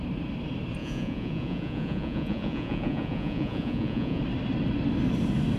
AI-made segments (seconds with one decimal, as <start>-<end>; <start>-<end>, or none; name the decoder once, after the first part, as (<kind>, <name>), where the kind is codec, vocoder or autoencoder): 0.8-4.2 (vocoder, Vocos)